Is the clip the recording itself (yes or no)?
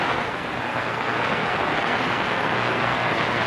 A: no